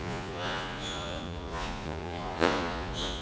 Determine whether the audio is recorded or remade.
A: remade